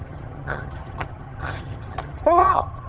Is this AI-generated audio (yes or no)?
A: yes